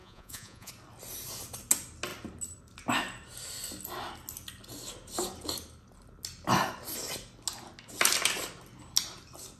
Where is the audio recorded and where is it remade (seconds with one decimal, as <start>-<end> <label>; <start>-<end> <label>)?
0.0-0.7 remade; 0.7-9.6 recorded

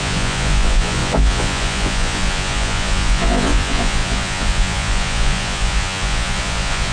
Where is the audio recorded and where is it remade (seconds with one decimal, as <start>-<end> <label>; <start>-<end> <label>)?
0.0-6.9 remade

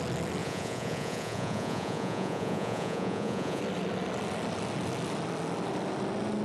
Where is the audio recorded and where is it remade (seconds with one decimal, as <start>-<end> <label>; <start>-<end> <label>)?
0.0-0.4 recorded; 0.4-3.6 remade; 3.6-6.4 recorded

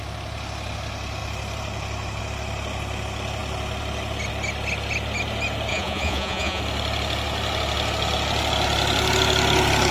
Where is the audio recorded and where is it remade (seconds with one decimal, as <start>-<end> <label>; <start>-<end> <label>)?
0.0-5.7 recorded; 5.7-6.6 remade; 6.6-9.9 recorded

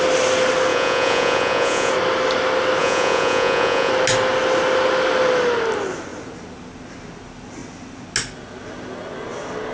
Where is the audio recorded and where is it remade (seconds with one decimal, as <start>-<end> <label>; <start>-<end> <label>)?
0.0-0.7 recorded; 0.7-1.9 remade; 1.9-2.8 recorded; 2.8-3.9 remade; 3.9-9.7 recorded

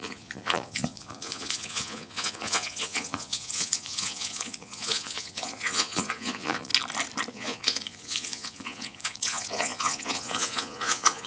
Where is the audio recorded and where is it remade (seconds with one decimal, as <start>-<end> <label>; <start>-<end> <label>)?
0.0-6.7 remade; 6.7-7.3 recorded; 7.3-11.3 remade

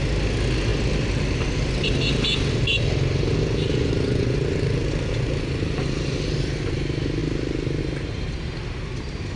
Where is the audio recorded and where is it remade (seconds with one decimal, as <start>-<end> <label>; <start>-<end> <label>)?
0.0-3.7 recorded; 3.7-4.4 remade; 4.4-9.4 recorded